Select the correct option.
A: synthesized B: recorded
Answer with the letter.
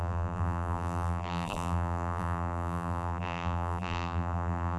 A